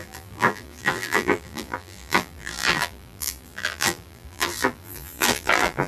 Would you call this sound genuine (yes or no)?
no